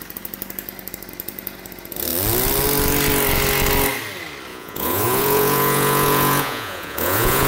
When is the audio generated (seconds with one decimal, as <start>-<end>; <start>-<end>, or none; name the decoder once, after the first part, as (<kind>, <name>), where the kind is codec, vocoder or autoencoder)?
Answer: 4.5-7.5 (vocoder, Vocos)

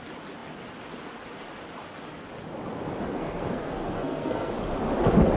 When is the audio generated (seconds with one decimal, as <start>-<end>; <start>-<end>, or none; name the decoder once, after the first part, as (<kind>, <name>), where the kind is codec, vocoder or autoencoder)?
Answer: 3.1-4.5 (codec, SNAC)

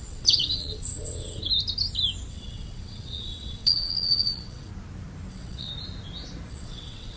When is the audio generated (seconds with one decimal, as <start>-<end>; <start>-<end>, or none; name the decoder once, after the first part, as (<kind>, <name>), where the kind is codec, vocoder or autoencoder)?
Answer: 0.0-1.4 (vocoder, WaveNeXt); 2.3-4.7; 5.3-5.7; 6.5-7.2

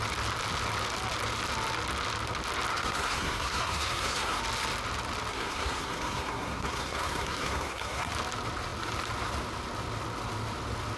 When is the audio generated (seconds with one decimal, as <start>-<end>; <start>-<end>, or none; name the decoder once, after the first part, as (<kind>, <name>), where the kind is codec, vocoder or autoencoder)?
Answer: 2.7-4.4 (codec, SNAC); 5.3-8.1

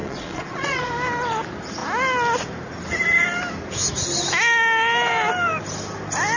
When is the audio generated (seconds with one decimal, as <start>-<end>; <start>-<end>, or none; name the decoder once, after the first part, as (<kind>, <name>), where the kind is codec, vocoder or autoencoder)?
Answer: 0.0-0.9 (vocoder, Vocos)

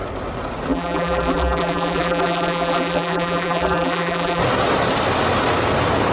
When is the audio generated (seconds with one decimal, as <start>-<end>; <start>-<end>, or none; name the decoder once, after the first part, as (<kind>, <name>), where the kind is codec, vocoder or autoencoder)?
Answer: 0.7-4.4 (vocoder, BigVGAN v2)